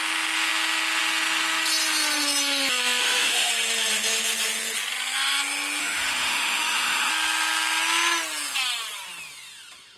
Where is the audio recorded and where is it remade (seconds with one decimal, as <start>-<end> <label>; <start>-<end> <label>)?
0.0-3.0 recorded; 3.0-3.5 remade; 3.5-5.8 recorded; 5.8-7.1 remade; 7.1-10.0 recorded